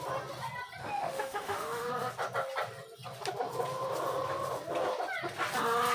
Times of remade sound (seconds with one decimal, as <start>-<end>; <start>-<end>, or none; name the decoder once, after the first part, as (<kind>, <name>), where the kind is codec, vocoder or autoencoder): 0.8-1.9 (autoencoder, DAC-VAE)